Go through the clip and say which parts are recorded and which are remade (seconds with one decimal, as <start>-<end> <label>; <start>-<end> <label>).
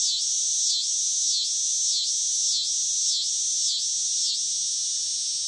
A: 0.0-5.5 recorded